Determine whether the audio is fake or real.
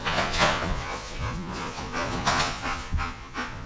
fake